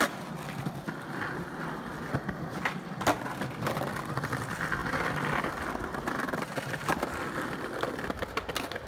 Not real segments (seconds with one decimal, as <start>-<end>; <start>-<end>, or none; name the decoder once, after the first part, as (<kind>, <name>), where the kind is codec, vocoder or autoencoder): none